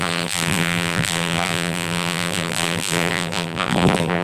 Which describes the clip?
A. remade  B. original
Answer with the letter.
A